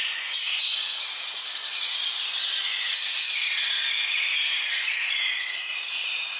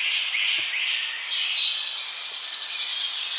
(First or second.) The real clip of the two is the second